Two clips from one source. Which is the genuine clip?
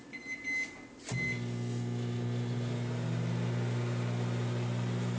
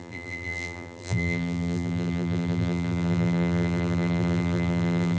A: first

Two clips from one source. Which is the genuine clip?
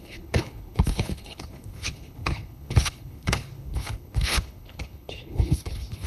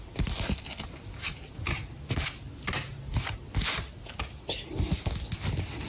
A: second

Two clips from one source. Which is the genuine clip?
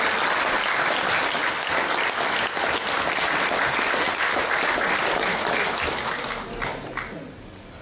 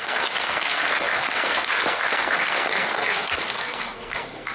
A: first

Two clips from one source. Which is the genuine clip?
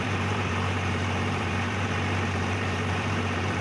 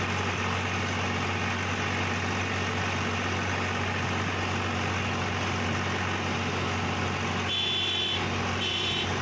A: second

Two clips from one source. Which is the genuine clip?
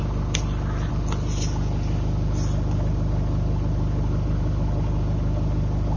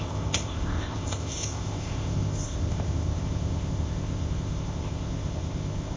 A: first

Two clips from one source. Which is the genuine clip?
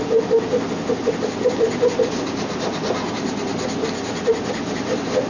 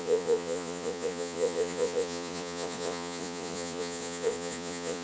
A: first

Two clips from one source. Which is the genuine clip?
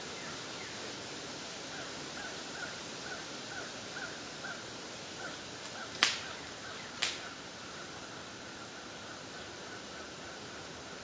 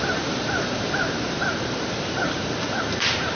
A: first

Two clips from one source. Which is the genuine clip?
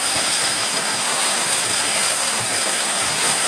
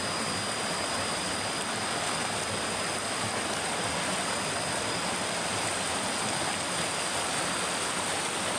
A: second